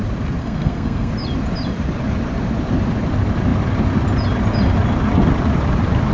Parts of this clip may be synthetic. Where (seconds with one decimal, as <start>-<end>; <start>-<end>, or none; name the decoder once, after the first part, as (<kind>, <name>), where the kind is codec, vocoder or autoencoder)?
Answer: 0.4-1.1 (codec, SNAC)